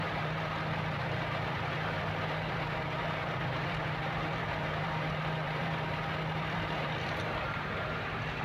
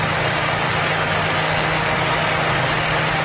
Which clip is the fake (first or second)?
first